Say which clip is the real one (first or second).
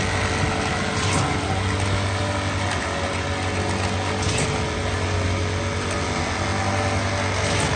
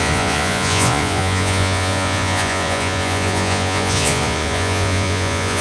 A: first